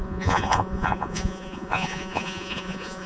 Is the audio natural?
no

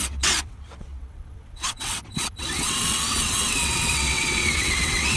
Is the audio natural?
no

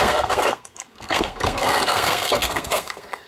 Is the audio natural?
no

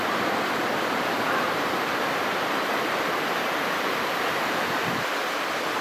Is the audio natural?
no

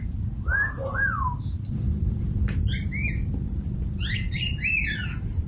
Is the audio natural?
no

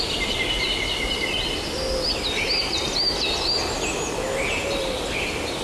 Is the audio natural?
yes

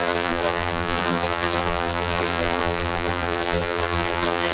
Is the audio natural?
no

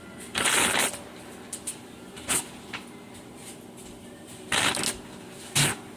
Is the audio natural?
yes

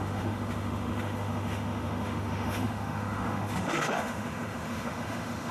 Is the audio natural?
no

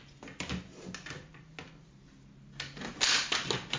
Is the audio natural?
yes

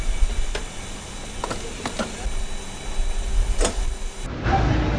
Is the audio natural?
yes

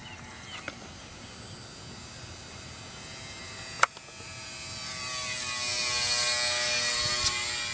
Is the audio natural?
yes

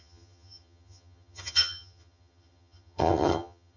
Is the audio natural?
no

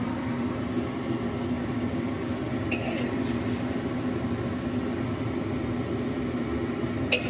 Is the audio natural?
yes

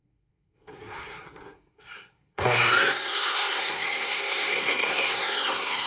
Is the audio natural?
no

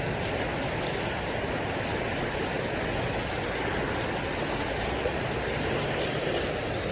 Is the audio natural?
yes